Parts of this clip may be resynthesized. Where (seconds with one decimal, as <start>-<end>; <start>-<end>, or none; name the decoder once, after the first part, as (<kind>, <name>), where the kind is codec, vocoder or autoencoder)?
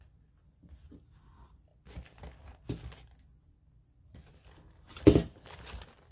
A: none